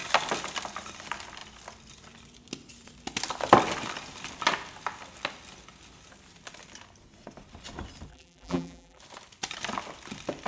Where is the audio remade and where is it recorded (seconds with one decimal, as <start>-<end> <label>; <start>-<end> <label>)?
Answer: 0.0-8.1 recorded; 8.1-9.0 remade; 9.0-10.5 recorded